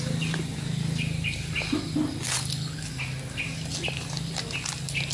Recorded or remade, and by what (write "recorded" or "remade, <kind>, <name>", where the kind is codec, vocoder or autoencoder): recorded